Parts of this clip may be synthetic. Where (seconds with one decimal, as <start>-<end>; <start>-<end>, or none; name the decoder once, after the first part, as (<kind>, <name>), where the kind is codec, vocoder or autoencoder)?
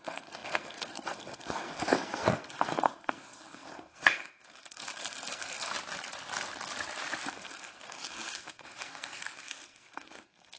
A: 0.0-5.7 (codec, SNAC); 7.3-10.6